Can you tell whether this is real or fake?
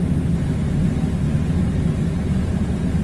real